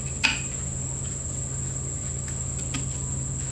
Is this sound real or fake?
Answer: real